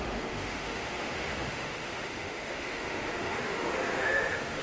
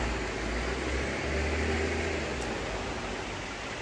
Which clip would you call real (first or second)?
second